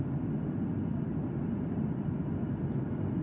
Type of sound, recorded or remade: recorded